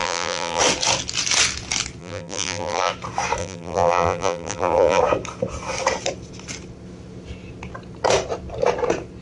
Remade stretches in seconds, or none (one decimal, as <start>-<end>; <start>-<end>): 0.0-0.6; 2.0-2.9; 3.4-5.0